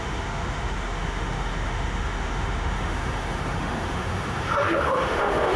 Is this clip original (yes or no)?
no